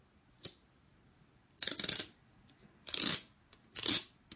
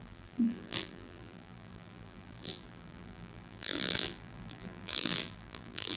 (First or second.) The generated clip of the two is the second